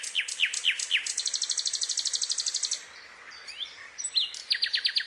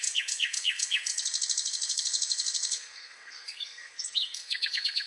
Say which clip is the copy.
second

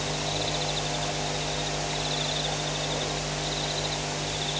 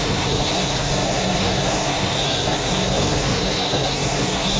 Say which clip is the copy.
second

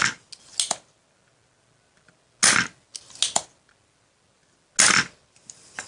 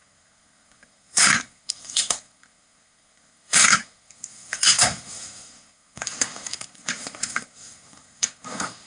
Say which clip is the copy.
second